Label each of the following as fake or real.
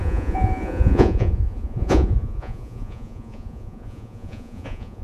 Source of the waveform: fake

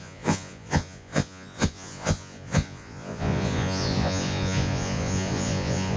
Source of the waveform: fake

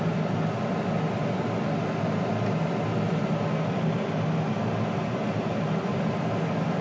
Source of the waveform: real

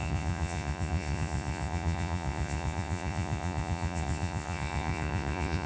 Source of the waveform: fake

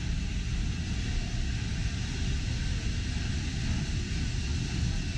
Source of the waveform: real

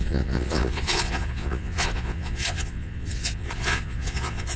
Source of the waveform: fake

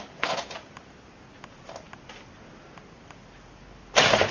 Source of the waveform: real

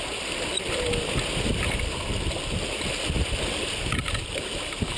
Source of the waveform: real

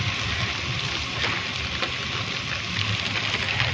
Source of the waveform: real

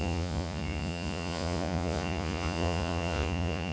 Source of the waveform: fake